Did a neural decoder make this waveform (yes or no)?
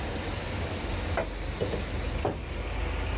no